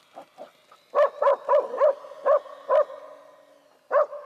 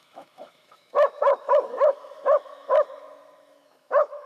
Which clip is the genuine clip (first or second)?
first